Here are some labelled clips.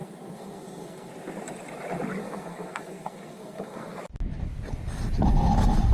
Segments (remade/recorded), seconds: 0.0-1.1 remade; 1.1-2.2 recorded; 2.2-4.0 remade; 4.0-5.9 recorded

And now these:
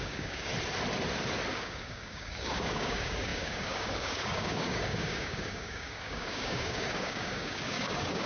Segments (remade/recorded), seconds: 0.0-0.5 remade; 0.5-1.5 recorded; 1.5-8.3 remade